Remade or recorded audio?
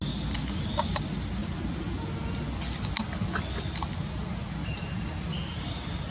recorded